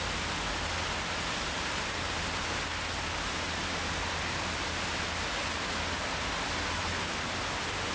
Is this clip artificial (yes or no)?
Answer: no